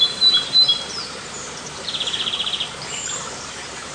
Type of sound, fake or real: fake